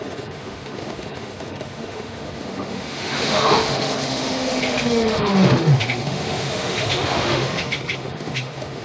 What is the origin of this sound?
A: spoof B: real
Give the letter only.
A